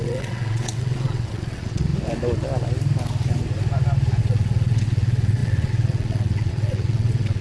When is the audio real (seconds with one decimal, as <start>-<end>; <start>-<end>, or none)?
1.9-4.2